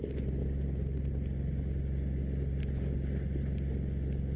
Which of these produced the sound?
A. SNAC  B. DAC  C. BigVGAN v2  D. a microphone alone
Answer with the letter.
D